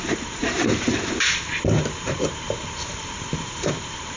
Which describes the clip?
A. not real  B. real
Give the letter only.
A